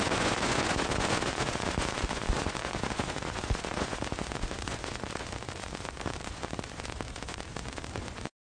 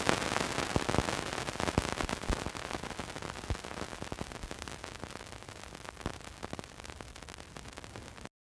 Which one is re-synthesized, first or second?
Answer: first